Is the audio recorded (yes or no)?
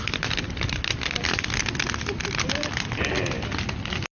yes